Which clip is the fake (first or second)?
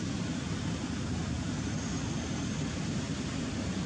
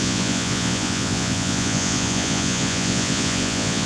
second